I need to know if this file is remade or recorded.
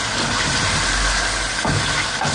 recorded